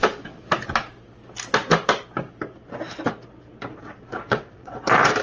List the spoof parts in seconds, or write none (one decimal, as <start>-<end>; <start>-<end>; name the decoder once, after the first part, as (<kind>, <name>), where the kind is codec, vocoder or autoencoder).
4.1-4.8 (vocoder, WaveNeXt)